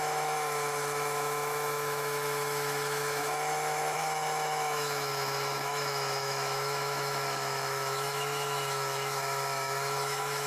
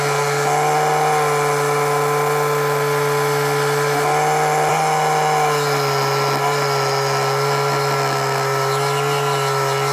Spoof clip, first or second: first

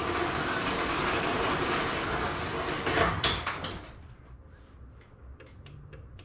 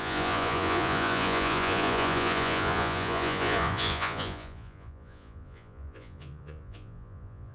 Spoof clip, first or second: second